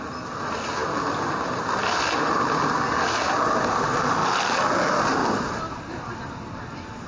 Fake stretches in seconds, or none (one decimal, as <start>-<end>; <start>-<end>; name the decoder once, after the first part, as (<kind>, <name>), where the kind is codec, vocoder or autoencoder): 5.2-6.2 (vocoder, BigVGAN v2)